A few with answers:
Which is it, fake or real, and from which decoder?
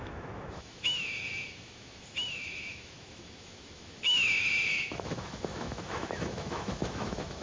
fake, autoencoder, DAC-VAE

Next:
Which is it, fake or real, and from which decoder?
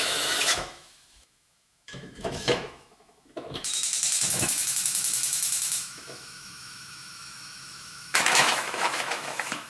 fake, autoencoder, DAC-VAE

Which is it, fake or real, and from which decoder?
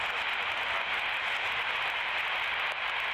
real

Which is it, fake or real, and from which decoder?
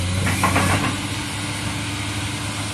real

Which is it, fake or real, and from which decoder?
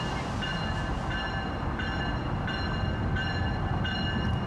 real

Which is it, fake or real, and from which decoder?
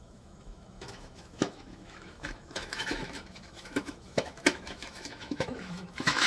fake, autoencoder, DAC-VAE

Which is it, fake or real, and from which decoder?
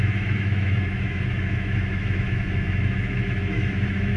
fake, autoencoder, DAC-VAE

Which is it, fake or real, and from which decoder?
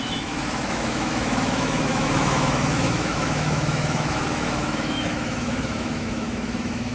fake, autoencoder, DAC-VAE